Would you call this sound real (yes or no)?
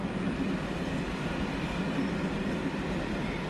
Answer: yes